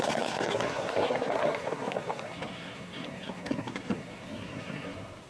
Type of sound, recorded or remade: remade